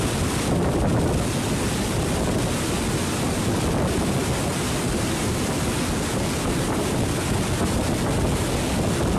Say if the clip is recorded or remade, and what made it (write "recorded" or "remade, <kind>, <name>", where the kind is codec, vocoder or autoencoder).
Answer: recorded